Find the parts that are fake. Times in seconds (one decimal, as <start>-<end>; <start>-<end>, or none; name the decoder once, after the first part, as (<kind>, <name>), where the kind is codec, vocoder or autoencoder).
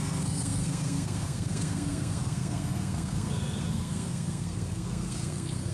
0.0-5.7 (codec, SNAC)